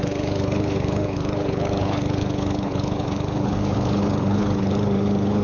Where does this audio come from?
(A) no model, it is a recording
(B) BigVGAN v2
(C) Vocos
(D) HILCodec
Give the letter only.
D